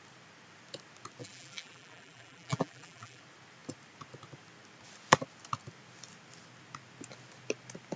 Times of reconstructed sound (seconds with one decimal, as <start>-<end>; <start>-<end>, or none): 1.2-3.2